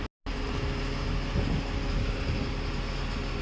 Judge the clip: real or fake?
real